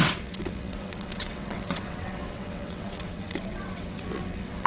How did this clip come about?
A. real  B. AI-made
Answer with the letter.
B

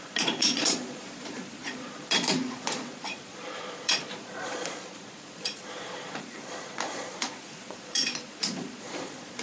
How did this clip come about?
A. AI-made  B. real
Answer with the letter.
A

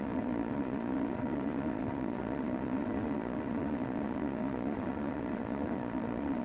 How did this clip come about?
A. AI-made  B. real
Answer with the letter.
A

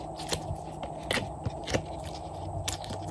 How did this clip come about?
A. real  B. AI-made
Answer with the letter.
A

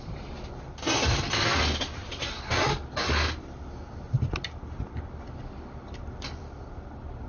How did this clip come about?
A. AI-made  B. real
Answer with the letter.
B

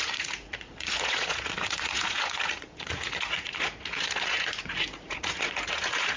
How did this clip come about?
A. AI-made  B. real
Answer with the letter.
A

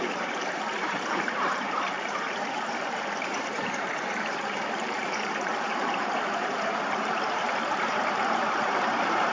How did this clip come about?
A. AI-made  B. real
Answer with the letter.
A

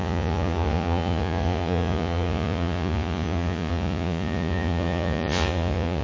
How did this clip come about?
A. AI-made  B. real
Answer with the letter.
A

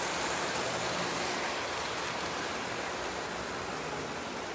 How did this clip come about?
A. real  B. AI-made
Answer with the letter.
A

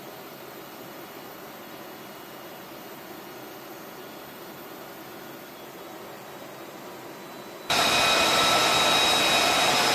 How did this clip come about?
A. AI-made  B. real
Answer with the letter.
B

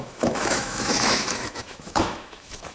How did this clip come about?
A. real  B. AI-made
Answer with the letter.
B